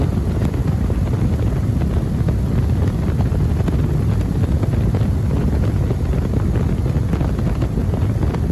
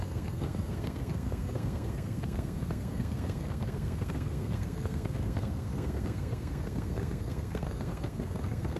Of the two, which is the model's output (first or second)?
second